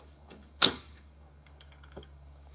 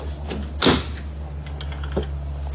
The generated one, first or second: first